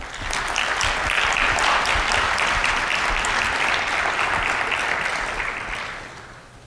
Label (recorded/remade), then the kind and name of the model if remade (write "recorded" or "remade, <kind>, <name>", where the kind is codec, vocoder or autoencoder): recorded